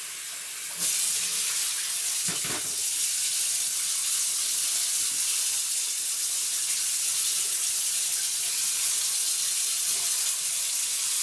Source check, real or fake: real